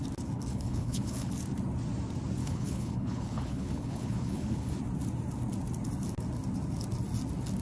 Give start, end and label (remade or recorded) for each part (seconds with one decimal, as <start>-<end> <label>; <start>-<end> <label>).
0.0-0.5 recorded; 0.5-1.3 remade; 1.3-2.4 recorded; 2.4-4.7 remade; 4.7-7.6 recorded